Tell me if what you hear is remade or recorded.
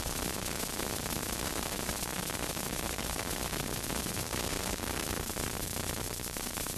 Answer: remade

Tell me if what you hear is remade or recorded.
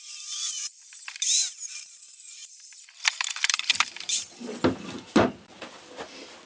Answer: remade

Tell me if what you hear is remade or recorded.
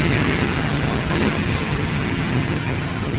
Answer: remade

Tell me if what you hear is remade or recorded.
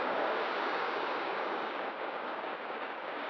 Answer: remade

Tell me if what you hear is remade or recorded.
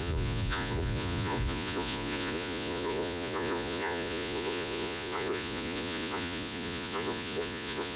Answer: remade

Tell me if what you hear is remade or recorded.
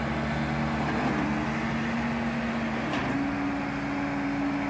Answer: recorded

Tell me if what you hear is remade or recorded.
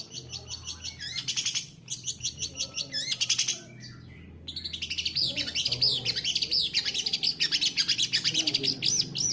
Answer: recorded